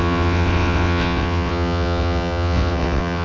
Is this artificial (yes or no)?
yes